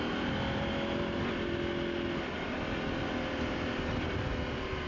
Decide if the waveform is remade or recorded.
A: recorded